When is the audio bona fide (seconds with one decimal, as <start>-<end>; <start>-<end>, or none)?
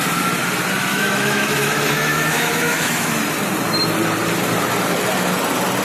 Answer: 0.0-0.9; 1.7-2.1; 3.1-5.8